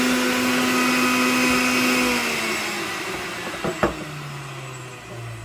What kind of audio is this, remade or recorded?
recorded